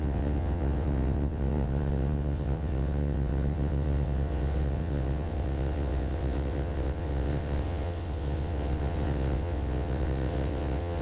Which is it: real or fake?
fake